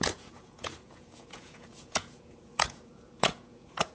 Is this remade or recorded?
remade